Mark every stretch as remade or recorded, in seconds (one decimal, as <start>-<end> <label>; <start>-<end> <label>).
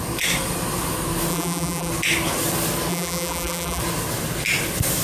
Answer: 0.0-1.3 recorded; 1.3-1.9 remade; 1.9-2.9 recorded; 2.9-3.8 remade; 3.8-5.0 recorded